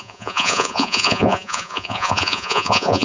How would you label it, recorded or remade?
remade